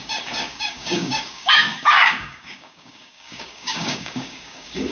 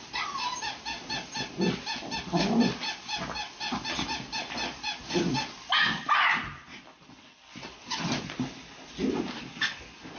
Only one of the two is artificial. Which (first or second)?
first